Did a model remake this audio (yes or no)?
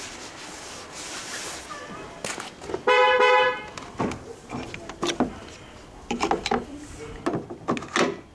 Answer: no